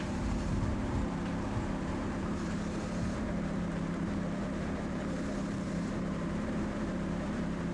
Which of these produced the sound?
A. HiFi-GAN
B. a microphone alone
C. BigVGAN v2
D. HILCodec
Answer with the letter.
C